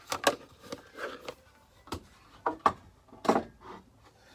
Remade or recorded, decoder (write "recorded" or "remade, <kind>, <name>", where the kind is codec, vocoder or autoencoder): recorded